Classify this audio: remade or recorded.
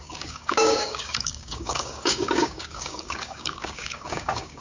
remade